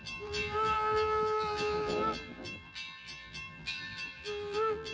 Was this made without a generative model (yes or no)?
no